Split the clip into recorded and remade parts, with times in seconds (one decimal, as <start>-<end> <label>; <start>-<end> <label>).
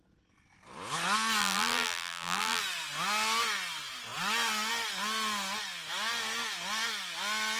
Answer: 0.0-1.4 recorded; 1.4-2.6 remade; 2.6-7.6 recorded